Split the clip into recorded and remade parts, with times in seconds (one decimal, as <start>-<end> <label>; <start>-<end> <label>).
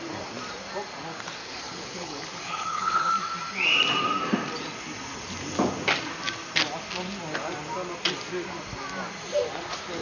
0.0-1.4 recorded; 1.4-3.1 remade; 3.1-10.0 recorded